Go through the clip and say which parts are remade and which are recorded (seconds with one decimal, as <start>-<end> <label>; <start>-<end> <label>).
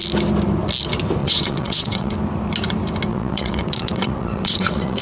0.0-1.2 recorded; 1.2-2.1 remade; 2.1-3.1 recorded; 3.1-5.0 remade